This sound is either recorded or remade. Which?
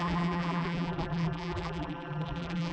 remade